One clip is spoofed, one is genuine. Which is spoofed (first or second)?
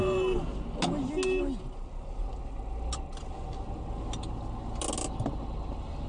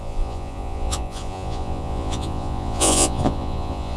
second